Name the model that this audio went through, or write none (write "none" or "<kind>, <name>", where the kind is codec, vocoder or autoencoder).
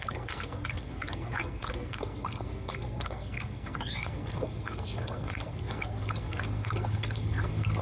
codec, SNAC